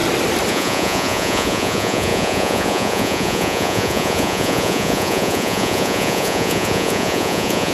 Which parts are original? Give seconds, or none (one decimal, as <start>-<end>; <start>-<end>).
0.0-0.5